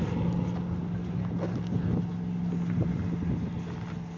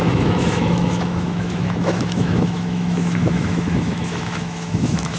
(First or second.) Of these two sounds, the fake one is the second